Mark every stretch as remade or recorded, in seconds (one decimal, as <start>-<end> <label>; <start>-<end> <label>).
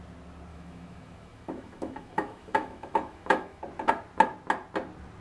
0.0-0.5 recorded; 0.5-3.6 remade; 3.6-5.2 recorded